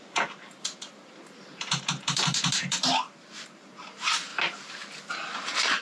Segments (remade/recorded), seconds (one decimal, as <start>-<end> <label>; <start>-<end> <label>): 0.0-4.3 remade; 4.3-5.1 recorded; 5.1-5.8 remade